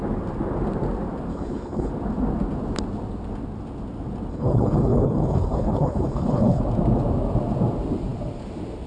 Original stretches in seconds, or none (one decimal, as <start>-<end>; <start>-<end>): 0.0-1.3; 1.9-4.3; 6.6-8.9